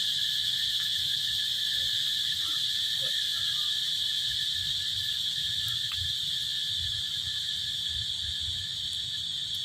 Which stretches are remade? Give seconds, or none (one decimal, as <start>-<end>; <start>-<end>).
none